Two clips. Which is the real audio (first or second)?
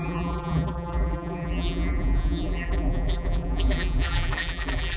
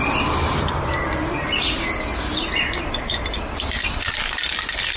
second